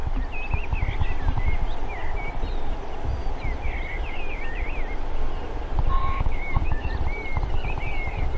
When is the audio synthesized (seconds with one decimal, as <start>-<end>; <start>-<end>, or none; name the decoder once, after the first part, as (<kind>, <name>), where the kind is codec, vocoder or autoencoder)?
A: 6.0-6.9 (autoencoder, DAC-VAE)